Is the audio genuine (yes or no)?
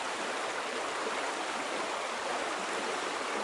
yes